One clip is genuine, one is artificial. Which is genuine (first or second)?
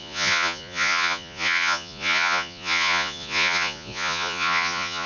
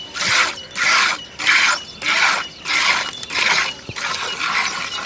second